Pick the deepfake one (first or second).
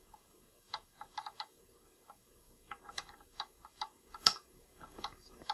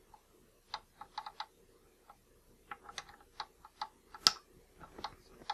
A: first